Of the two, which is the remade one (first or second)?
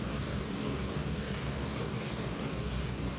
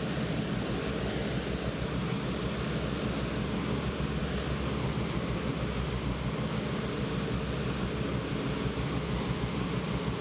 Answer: first